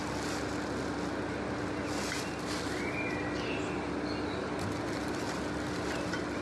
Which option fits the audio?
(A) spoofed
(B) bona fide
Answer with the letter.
B